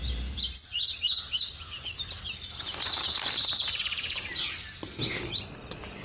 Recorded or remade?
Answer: recorded